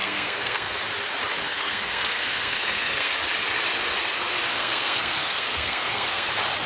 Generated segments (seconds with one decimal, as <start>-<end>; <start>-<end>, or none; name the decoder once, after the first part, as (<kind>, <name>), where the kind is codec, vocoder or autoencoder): 0.0-0.8 (codec, SNAC); 1.5-3.1; 4.5-6.3